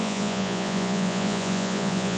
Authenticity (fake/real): fake